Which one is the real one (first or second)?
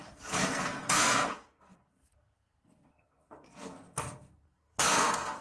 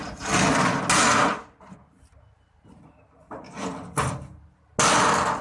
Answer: second